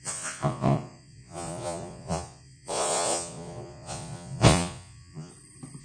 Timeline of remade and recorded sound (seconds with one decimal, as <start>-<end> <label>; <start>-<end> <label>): 0.0-5.3 remade; 5.3-5.8 recorded